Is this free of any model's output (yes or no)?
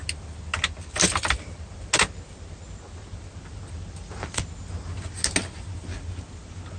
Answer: yes